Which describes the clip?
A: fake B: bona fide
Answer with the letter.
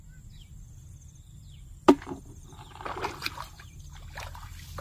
B